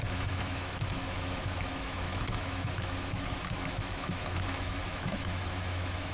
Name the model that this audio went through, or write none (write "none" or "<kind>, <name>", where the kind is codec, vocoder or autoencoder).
autoencoder, DAC-VAE